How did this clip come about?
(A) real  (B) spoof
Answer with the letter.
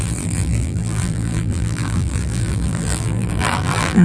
B